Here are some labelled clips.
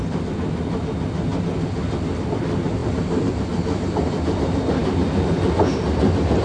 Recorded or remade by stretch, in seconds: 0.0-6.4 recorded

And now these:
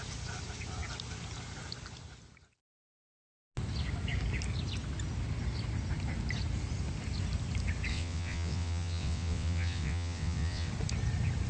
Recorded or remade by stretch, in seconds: 0.0-7.9 recorded; 7.9-10.7 remade; 10.7-11.5 recorded

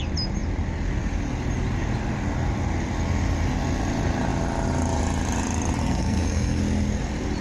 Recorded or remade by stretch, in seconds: 0.0-5.8 recorded; 5.8-6.6 remade; 6.6-7.4 recorded

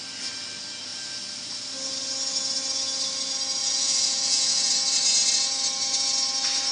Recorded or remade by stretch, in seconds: 0.0-3.6 recorded; 3.6-4.7 remade; 4.7-6.7 recorded

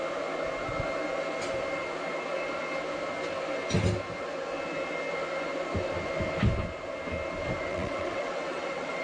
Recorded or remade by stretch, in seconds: 0.0-7.7 recorded; 7.7-9.0 remade